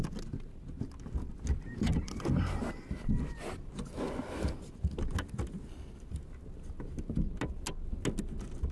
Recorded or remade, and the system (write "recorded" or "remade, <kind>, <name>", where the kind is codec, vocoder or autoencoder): recorded